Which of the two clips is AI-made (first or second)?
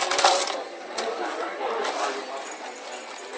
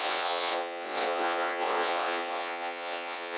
second